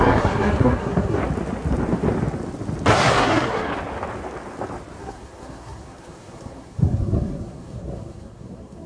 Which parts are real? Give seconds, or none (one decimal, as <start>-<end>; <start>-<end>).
1.2-2.9; 3.7-5.0